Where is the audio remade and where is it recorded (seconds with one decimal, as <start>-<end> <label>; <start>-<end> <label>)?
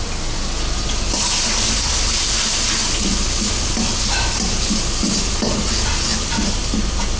0.0-7.2 recorded